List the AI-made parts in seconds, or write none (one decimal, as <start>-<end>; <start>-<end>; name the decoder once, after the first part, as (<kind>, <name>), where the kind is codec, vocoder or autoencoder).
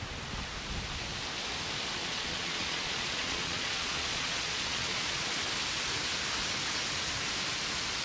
2.0-5.3 (vocoder, Vocos)